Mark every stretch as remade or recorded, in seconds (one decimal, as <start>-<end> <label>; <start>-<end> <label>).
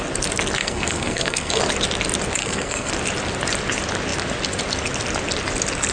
0.0-0.6 recorded; 0.6-1.6 remade; 1.6-2.4 recorded; 2.4-2.9 remade; 2.9-5.9 recorded